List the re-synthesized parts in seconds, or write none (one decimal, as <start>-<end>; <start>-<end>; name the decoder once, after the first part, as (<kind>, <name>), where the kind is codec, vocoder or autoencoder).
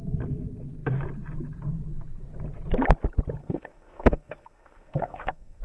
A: 3.4-5.6 (codec, SNAC)